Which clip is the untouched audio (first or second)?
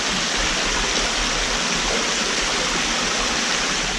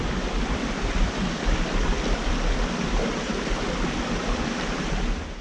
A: first